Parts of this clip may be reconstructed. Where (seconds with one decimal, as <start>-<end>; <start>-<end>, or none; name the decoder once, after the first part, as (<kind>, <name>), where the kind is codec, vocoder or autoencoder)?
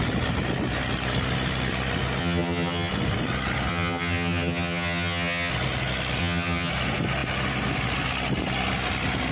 2.2-2.9 (vocoder, HiFi-GAN); 3.7-5.5; 6.2-6.7